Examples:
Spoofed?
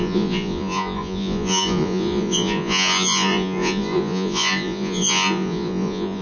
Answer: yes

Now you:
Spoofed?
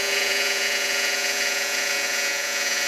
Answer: yes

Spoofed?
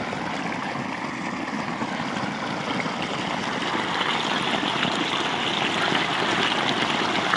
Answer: no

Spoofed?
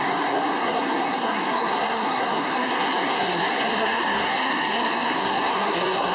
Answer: yes